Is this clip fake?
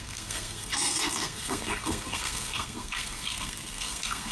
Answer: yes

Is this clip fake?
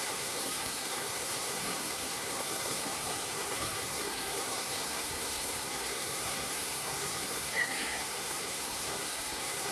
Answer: yes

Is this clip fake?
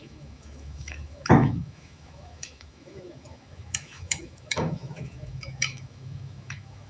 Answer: yes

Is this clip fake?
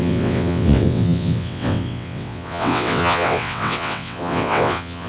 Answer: yes